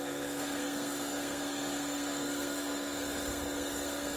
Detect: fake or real fake